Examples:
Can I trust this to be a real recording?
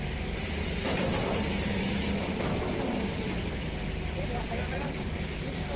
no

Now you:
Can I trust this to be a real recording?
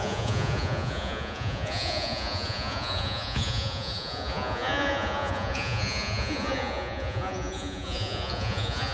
no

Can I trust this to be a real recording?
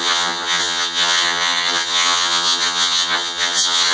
no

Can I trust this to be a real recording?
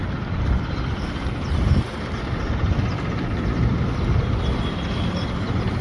yes